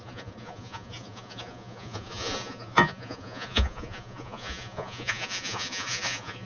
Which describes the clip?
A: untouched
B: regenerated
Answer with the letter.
B